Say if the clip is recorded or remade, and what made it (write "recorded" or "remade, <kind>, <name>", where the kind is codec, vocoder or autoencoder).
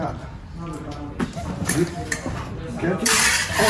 remade, vocoder, BigVGAN v2